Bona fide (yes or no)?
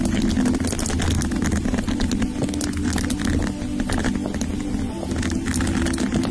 yes